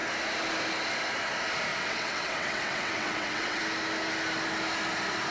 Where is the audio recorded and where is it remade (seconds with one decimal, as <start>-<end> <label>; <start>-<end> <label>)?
0.0-1.7 recorded; 1.7-3.6 remade; 3.6-5.3 recorded